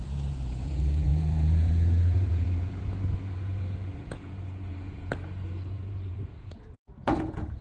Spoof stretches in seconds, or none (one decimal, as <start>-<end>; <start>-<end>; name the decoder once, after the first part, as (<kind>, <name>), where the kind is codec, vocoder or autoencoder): 0.0-7.6 (vocoder, Vocos)